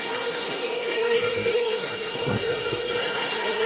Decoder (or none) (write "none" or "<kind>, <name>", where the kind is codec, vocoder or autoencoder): codec, SNAC